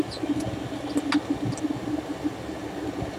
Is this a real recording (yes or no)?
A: yes